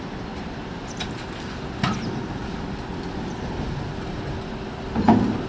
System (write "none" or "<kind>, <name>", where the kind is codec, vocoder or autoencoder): none